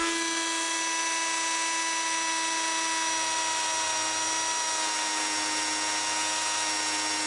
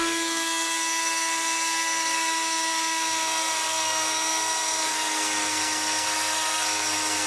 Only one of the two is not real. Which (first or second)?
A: second